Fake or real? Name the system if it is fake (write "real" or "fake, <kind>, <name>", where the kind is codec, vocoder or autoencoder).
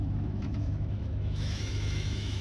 fake, autoencoder, DAC-VAE